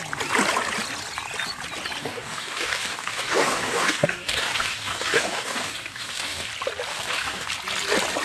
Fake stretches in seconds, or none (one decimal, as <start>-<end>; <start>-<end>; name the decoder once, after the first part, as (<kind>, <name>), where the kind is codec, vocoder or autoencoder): 2.0-6.5 (codec, DAC); 6.9-7.5